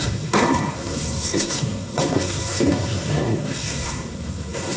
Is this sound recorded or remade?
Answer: remade